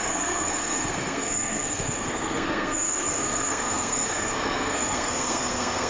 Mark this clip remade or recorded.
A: remade